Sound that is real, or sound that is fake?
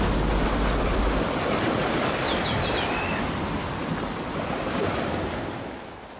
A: real